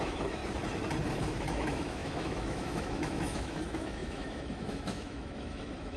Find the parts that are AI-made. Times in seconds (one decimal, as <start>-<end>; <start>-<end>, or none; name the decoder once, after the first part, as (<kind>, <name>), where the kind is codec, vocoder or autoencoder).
0.0-0.4 (autoencoder, DAC-VAE); 1.1-6.0